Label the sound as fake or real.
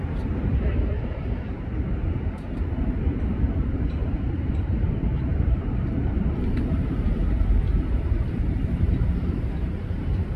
fake